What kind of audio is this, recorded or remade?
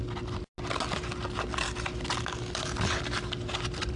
recorded